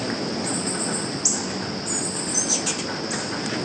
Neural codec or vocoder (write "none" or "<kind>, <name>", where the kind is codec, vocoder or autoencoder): none